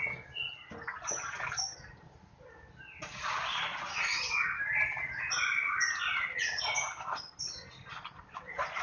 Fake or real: real